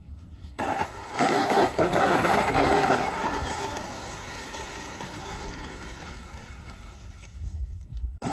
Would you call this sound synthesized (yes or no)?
yes